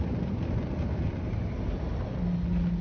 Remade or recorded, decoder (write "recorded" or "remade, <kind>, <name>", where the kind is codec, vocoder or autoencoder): recorded